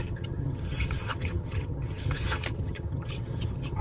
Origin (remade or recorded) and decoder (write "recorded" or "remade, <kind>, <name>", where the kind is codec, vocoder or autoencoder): remade, vocoder, HiFi-GAN